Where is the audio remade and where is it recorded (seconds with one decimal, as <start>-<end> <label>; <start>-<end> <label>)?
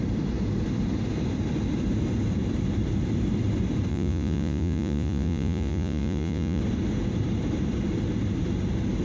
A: 0.0-3.9 recorded; 3.9-6.6 remade; 6.6-9.0 recorded